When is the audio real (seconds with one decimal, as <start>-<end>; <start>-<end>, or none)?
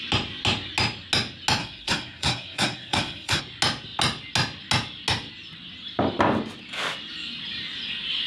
0.0-1.6; 3.4-8.3